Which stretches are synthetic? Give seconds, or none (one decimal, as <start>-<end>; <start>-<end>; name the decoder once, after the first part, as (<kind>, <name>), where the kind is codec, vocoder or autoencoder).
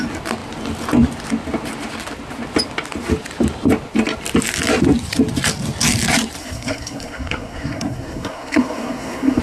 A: 6.4-9.4 (codec, SNAC)